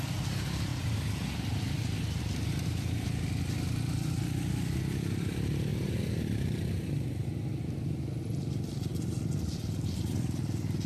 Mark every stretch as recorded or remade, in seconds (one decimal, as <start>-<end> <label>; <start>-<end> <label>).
0.0-0.7 remade; 0.7-2.2 recorded; 2.2-5.7 remade; 5.7-7.6 recorded; 7.6-8.9 remade; 8.9-9.4 recorded; 9.4-10.9 remade